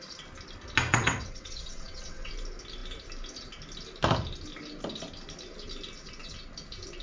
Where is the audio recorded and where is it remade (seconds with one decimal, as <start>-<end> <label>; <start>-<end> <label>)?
0.0-0.9 recorded; 0.9-2.3 remade; 2.3-7.0 recorded